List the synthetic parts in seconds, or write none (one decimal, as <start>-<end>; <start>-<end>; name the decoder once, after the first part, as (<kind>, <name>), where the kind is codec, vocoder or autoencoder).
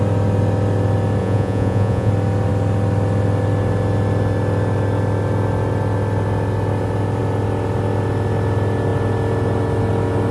1.2-2.1 (vocoder, Vocos)